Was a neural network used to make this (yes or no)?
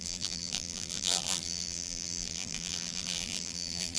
yes